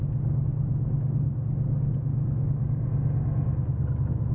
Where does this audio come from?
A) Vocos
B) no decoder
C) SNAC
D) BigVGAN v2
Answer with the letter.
B